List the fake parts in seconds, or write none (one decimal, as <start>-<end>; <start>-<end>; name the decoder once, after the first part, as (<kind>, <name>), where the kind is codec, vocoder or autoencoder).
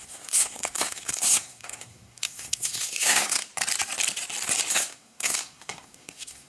0.0-3.5 (codec, SNAC); 4.7-6.5